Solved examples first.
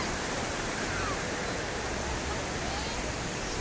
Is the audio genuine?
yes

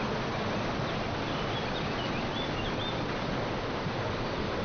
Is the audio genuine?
yes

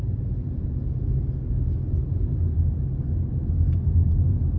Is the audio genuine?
yes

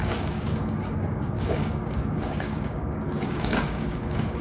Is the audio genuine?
no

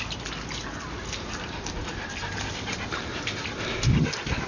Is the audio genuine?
yes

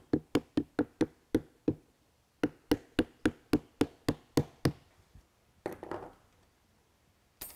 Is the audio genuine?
yes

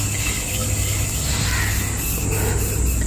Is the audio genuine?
yes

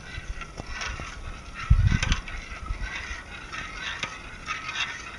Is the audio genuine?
yes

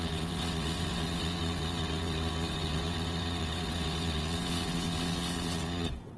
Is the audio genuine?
no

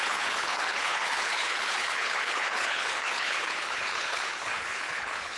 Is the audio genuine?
no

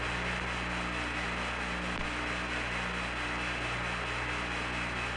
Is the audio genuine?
yes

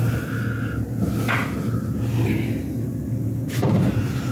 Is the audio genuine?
yes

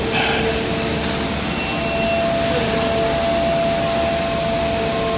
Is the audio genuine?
yes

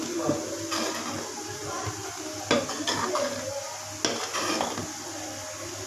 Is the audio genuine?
yes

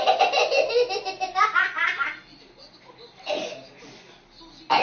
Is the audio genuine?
yes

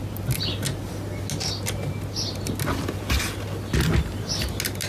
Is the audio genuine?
yes